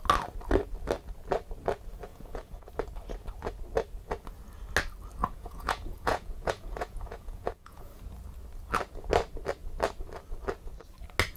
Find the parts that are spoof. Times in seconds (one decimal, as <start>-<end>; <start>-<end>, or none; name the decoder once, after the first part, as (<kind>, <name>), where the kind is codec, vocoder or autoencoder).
2.1-2.7 (vocoder, Vocos); 5.2-8.0